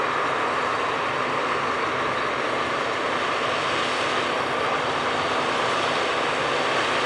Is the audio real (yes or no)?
yes